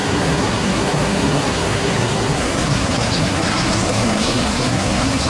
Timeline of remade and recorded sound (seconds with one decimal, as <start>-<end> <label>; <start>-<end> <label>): 0.0-5.3 remade